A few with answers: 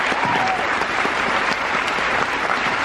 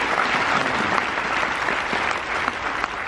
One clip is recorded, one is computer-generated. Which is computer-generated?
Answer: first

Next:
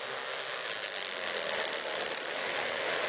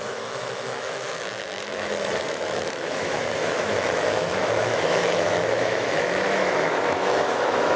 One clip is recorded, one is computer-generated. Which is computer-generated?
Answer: second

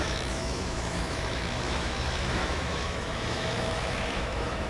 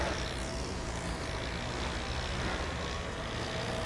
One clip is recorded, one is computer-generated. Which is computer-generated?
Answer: first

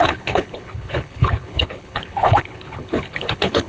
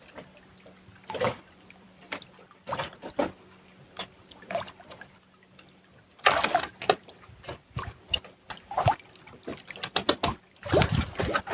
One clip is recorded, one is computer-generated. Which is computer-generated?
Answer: first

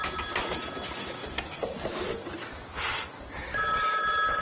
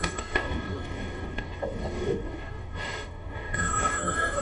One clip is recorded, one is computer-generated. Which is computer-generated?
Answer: second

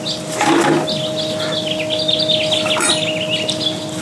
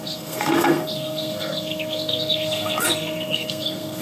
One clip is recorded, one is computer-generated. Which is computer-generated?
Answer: second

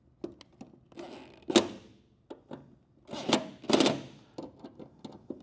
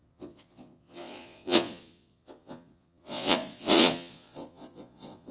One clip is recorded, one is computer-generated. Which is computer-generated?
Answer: second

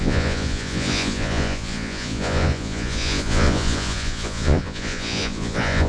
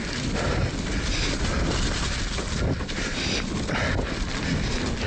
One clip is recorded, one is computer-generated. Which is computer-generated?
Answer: first